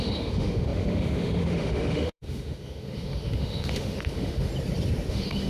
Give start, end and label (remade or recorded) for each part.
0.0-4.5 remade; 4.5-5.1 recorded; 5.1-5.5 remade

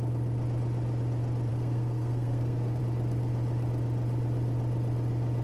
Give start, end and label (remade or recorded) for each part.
0.0-1.5 recorded; 1.5-2.8 remade; 2.8-5.4 recorded

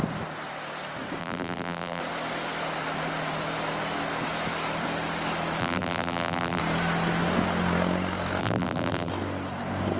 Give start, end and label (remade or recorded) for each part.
0.0-1.2 recorded; 1.2-2.0 remade; 2.0-5.6 recorded; 5.6-6.6 remade; 6.6-8.4 recorded; 8.4-9.1 remade; 9.1-10.0 recorded

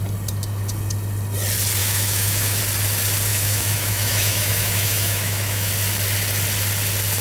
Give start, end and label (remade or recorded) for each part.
0.0-1.8 recorded; 1.8-2.6 remade; 2.6-3.3 recorded; 3.3-5.7 remade; 5.7-7.2 recorded

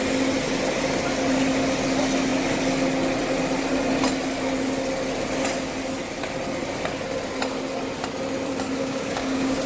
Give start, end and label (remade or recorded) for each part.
0.0-8.8 recorded; 8.8-9.7 remade

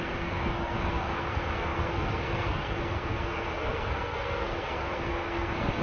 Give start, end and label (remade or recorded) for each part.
0.0-5.8 remade

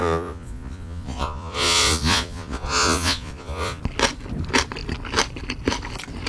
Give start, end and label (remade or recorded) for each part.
0.0-3.8 remade; 3.8-6.3 recorded